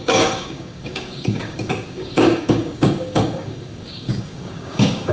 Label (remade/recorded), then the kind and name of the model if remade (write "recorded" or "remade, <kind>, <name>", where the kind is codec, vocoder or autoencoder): remade, codec, DAC